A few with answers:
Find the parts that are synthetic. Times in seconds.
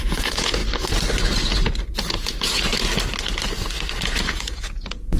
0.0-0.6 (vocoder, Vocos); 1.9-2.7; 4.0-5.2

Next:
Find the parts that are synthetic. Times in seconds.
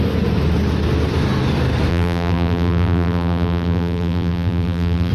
1.9-5.1 (vocoder, BigVGAN v2)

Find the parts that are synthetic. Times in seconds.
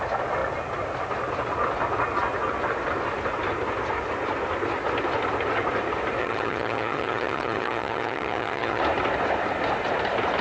6.2-8.8 (vocoder, HiFi-GAN)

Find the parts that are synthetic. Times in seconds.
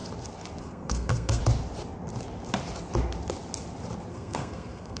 0.6-1.4 (codec, SNAC); 4.1-5.0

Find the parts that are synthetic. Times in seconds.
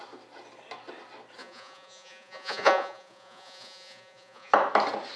1.4-4.5 (vocoder, Vocos)